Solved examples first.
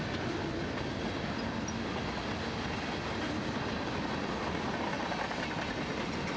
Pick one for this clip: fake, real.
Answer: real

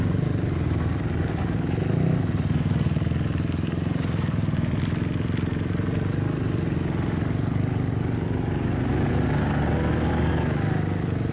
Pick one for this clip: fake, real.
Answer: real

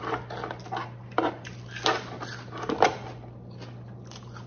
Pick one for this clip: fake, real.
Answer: real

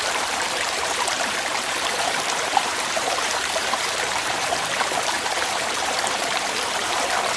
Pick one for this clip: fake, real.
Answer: fake